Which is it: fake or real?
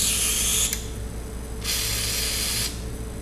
real